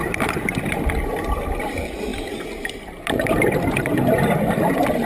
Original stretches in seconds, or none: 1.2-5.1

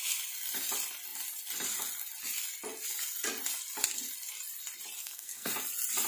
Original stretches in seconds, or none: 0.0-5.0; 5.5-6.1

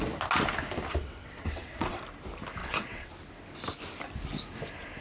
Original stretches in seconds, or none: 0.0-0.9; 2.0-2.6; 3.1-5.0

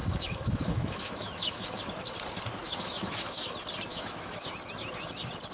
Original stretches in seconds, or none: 1.8-2.6; 3.5-3.9; 4.5-5.5